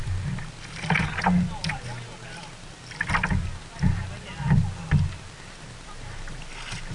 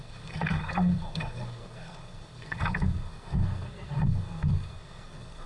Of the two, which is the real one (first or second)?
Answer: first